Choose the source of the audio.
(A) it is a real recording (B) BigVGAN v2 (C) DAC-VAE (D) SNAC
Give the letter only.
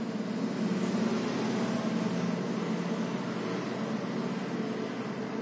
A